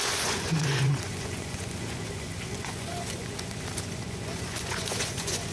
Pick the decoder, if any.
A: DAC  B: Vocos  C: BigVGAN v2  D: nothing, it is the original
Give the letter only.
B